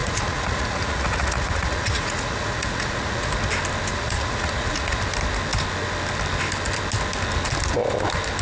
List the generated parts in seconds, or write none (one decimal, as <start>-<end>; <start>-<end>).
0.0-3.3; 3.9-5.0

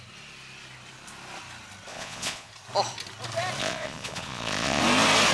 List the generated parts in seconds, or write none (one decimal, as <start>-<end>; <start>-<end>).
1.9-2.5; 3.6-4.8

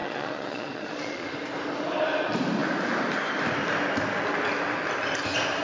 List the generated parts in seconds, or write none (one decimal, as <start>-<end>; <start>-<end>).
0.0-1.3

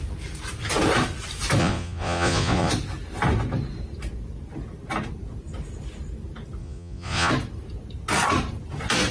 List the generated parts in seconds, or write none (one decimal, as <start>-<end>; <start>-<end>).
1.6-2.7; 6.6-7.3

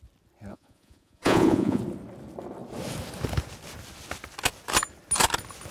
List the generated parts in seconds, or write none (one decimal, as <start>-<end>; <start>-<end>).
0.5-1.8

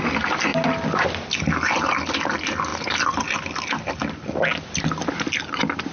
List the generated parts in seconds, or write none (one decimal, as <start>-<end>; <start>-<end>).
none

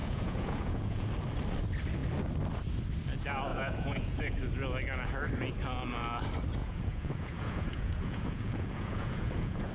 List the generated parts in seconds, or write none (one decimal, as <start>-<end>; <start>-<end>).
0.0-1.1; 3.5-4.4; 6.6-9.7

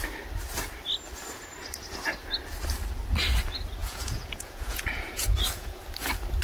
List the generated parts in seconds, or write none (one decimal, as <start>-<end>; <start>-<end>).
3.8-5.8